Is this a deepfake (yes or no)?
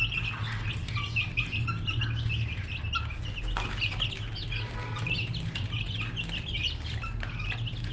no